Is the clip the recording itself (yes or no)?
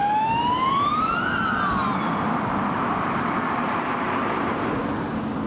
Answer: yes